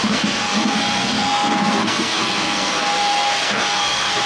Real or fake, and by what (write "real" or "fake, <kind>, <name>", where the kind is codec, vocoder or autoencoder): fake, codec, SNAC